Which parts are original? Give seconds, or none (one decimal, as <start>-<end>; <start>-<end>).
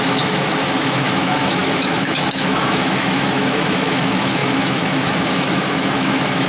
none